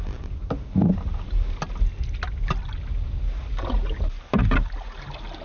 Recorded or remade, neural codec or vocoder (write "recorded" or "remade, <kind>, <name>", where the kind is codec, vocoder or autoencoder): recorded